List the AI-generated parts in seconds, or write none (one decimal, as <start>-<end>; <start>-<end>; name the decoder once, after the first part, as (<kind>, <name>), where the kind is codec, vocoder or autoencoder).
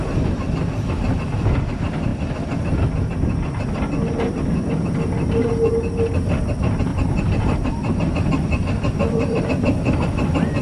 2.1-2.6 (vocoder, BigVGAN v2); 6.9-9.4